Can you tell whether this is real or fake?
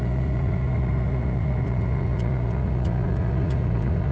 fake